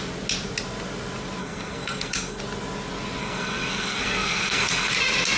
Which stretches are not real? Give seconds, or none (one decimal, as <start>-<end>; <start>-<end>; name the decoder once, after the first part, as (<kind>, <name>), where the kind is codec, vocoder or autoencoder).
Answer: 1.4-2.4 (codec, SNAC); 3.2-4.9